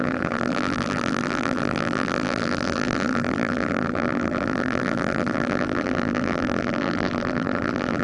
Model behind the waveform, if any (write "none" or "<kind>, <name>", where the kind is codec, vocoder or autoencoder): vocoder, BigVGAN v2